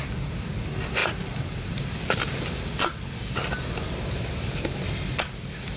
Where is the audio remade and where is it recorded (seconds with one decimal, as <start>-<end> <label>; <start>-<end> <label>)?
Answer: 0.0-5.8 recorded